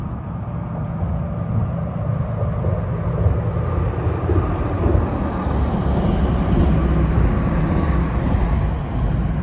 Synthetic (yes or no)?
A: no